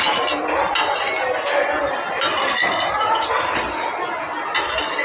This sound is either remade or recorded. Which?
recorded